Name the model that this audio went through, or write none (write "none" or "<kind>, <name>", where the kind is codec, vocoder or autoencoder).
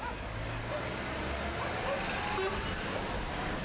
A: none